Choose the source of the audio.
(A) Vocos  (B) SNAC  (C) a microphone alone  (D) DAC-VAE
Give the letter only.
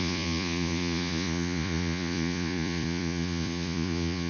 A